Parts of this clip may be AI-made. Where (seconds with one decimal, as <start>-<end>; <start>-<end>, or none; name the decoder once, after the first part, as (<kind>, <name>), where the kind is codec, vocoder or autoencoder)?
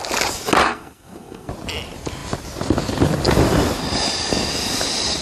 0.6-1.5 (codec, SNAC)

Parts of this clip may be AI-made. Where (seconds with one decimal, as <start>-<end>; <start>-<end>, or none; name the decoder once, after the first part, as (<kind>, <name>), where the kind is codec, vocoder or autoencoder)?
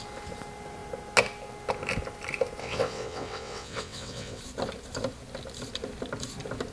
2.6-4.4 (vocoder, WaveNeXt)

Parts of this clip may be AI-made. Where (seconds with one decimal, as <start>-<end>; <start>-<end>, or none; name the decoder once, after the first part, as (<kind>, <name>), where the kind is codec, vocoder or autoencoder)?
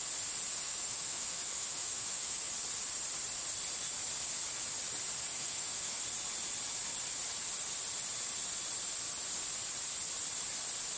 0.5-2.4 (autoencoder, DAC-VAE); 5.3-6.0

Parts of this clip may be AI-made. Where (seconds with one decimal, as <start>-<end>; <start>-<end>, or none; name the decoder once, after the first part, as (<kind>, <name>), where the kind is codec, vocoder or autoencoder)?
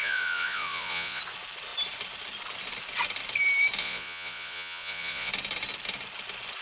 0.0-1.2 (vocoder, Vocos); 3.8-5.3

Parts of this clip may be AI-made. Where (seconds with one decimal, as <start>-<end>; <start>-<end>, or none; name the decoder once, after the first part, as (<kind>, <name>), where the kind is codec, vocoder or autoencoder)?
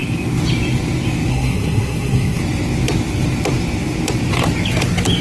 1.3-2.4 (codec, SNAC)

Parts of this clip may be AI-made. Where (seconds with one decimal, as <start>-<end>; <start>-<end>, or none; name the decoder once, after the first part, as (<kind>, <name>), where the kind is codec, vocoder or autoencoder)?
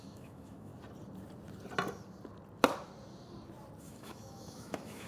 0.0-0.7 (autoencoder, DAC-VAE); 3.8-5.1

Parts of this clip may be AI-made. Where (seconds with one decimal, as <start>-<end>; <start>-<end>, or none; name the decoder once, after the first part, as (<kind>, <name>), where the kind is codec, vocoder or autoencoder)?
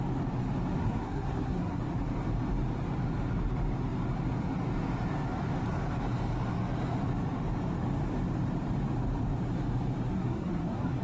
0.8-1.8 (codec, SNAC); 10.1-11.0